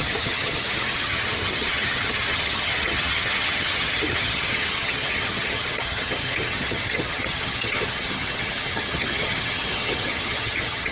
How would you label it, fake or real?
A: fake